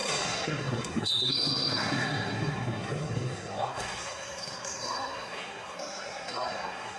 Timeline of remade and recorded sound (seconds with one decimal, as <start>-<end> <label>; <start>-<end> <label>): 0.0-7.0 remade